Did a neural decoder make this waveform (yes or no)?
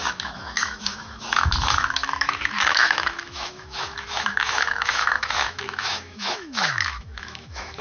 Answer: yes